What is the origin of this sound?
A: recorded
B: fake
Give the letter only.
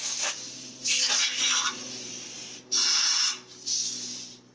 A